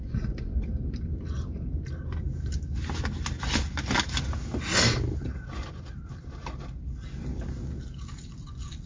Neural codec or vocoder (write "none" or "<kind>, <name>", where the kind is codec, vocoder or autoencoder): none